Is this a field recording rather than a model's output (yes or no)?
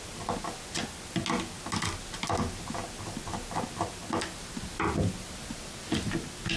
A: yes